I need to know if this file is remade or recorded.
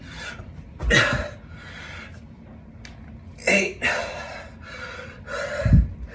recorded